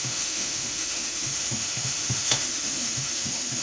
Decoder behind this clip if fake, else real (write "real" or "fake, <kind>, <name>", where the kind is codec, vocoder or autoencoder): fake, autoencoder, DAC-VAE